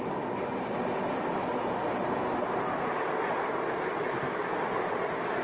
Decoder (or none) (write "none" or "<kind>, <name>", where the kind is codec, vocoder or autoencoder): none